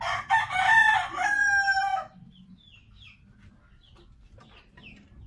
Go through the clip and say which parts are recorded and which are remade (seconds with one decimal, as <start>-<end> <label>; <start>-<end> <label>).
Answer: 0.0-0.8 recorded; 0.8-1.5 remade; 1.5-5.3 recorded